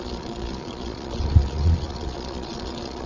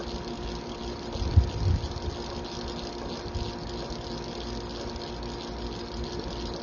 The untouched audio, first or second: second